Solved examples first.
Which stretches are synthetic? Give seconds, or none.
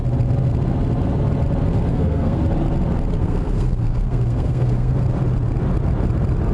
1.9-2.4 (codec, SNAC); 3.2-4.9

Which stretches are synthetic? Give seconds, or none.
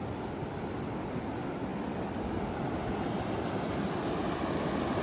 none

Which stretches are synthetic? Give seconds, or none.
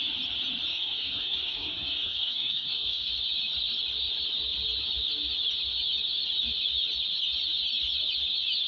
0.7-3.1 (codec, SNAC)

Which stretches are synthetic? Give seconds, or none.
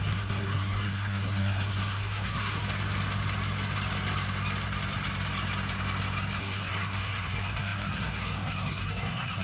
0.0-2.6 (codec, SNAC); 6.4-9.4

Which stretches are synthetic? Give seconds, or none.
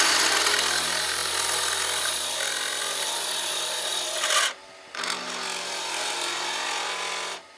none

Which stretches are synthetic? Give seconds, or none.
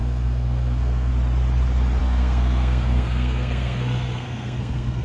0.0-1.1 (codec, SNAC); 2.0-5.0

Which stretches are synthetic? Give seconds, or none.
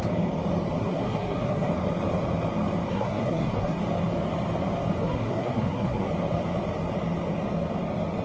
0.8-1.7 (codec, SNAC); 2.9-3.8; 5.0-6.1